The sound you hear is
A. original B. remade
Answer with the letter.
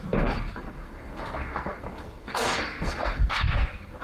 B